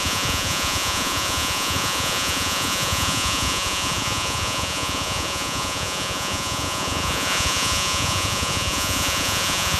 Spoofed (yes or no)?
yes